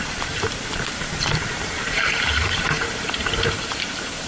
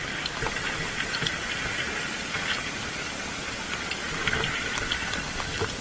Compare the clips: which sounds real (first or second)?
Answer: second